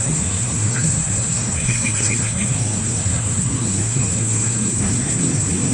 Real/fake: fake